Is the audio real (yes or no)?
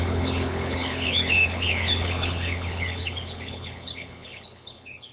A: no